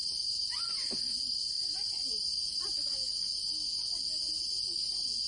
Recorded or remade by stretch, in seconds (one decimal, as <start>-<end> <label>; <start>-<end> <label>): 0.0-5.3 recorded